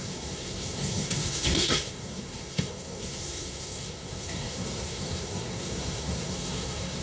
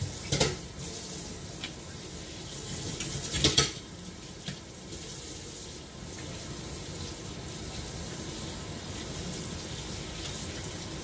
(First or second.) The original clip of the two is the second